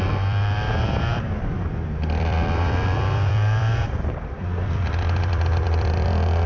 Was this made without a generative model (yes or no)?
no